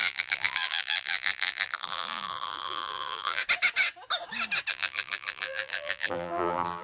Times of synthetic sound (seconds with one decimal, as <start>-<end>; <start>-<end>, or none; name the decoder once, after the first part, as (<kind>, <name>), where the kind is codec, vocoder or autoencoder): 0.0-3.4 (vocoder, BigVGAN v2); 4.7-6.8